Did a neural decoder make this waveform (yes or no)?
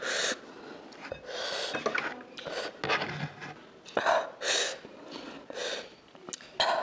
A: no